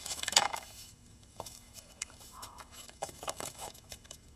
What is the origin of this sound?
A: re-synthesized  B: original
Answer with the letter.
A